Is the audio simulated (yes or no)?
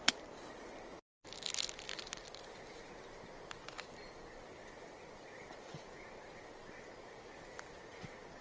no